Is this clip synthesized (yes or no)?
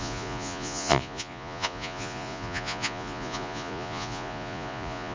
yes